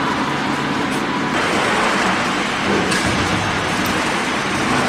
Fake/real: real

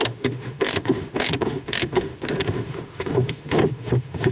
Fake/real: fake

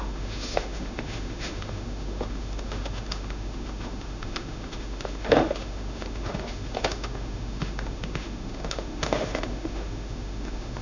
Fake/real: fake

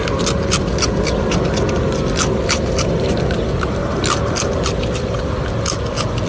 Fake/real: real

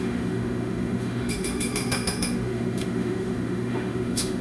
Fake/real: fake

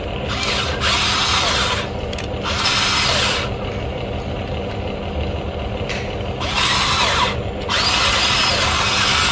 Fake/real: real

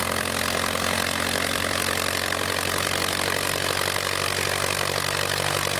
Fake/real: real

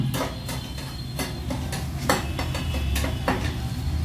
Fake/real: real